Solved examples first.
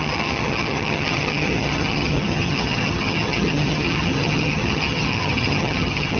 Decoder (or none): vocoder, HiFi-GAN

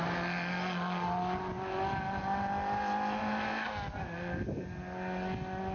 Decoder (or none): none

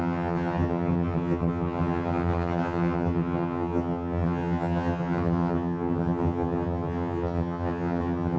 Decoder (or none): vocoder, HiFi-GAN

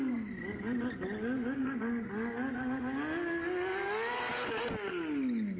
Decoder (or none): none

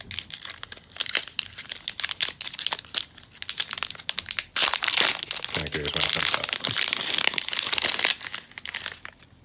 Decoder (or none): none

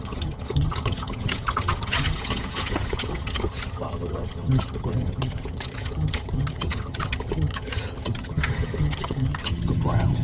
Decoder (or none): vocoder, HiFi-GAN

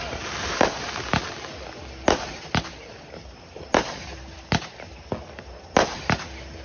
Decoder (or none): none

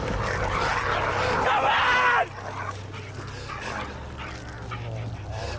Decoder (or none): none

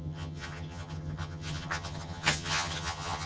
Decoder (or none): vocoder, HiFi-GAN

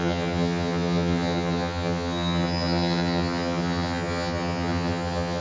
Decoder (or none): vocoder, HiFi-GAN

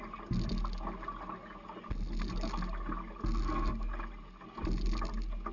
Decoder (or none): none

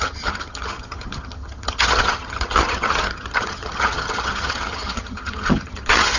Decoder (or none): vocoder, HiFi-GAN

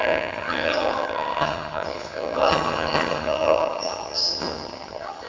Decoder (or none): vocoder, HiFi-GAN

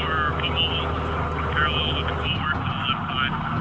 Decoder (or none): none